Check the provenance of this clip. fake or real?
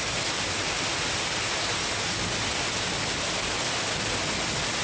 real